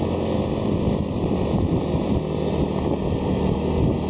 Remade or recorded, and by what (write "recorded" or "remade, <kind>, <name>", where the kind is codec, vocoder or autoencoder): recorded